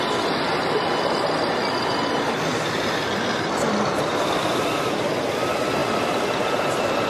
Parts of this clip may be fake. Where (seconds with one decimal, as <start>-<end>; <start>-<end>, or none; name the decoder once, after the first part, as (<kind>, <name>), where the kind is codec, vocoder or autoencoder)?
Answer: 5.8-6.4 (vocoder, BigVGAN v2)